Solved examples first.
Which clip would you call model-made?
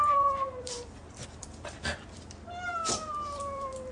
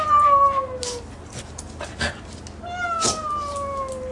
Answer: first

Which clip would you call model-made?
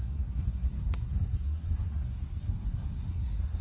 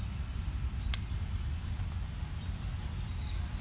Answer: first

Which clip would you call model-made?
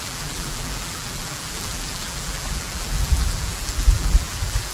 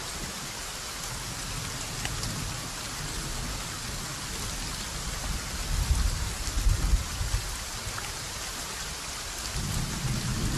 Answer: first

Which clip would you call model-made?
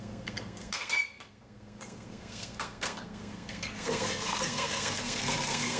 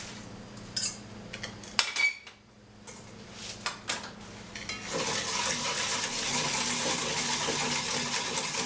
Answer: first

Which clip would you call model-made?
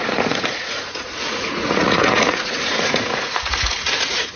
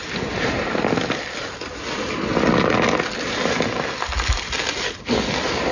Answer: first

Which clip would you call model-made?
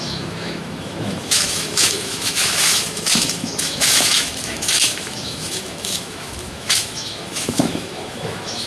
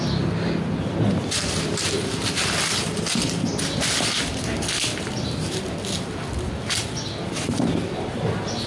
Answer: first